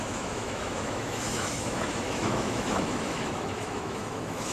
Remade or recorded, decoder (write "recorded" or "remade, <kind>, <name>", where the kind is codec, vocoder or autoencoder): remade, autoencoder, DAC-VAE